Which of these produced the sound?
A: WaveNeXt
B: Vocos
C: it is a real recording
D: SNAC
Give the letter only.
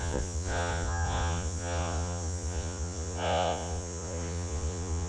B